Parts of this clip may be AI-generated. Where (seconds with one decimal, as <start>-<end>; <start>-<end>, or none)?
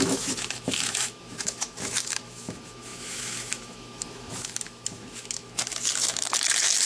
0.0-6.9